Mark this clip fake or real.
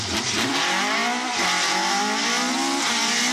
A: real